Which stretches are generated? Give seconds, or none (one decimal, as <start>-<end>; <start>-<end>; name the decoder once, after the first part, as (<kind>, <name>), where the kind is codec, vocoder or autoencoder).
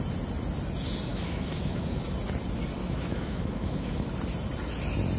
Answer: 1.1-2.0 (autoencoder, DAC-VAE); 2.8-4.1